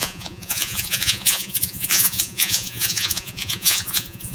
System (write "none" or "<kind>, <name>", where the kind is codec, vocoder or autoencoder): vocoder, Vocos